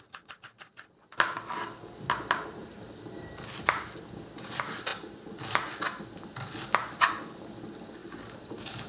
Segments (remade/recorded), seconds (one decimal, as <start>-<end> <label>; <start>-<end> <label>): 0.0-8.0 recorded; 8.0-8.9 remade